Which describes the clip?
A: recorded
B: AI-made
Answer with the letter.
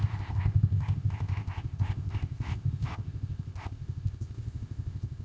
B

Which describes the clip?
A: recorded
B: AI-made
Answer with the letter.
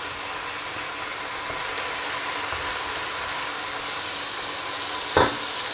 A